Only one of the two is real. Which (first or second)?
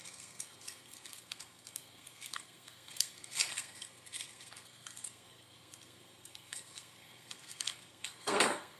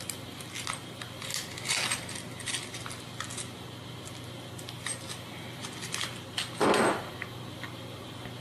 second